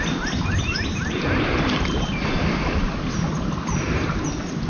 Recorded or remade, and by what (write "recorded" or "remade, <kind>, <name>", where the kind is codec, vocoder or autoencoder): recorded